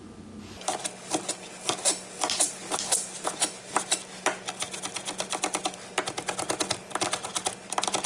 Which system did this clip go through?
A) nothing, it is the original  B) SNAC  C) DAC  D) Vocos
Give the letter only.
A